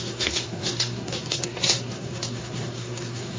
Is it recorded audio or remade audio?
remade